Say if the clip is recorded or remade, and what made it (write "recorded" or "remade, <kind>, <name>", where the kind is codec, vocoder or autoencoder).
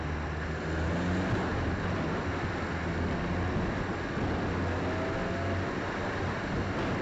recorded